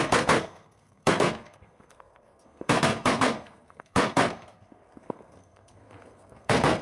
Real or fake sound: fake